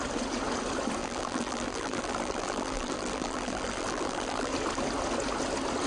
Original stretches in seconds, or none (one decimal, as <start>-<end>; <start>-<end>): 0.0-1.0; 4.5-5.9